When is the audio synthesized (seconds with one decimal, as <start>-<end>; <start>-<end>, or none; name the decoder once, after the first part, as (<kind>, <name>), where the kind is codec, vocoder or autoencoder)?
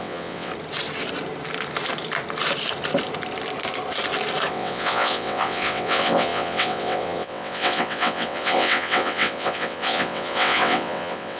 0.0-0.5 (vocoder, WaveNeXt); 4.5-11.4